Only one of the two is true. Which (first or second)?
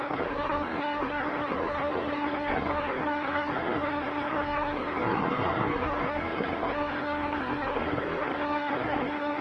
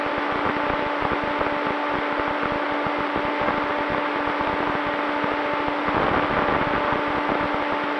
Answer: second